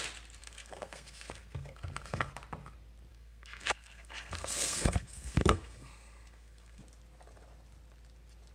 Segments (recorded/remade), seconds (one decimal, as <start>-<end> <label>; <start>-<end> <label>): 0.0-0.4 recorded; 0.4-2.3 remade; 2.3-3.1 recorded; 3.1-6.8 remade; 6.8-8.5 recorded